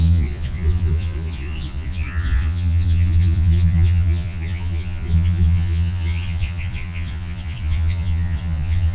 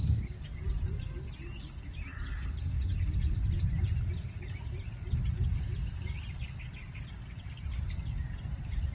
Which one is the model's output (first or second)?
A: first